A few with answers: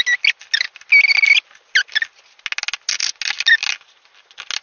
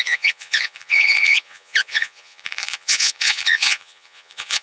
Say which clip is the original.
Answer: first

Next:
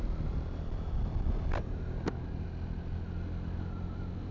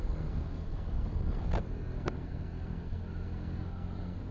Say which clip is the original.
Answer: first